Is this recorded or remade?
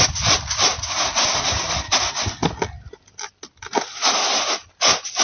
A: recorded